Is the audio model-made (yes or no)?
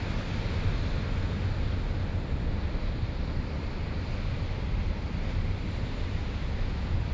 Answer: no